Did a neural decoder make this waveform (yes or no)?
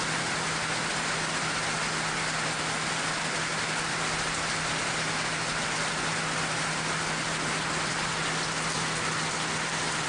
no